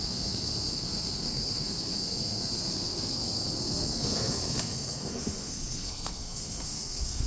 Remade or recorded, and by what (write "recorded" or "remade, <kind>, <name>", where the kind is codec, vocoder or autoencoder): remade, codec, SNAC